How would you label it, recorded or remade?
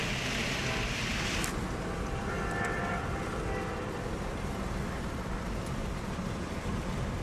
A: remade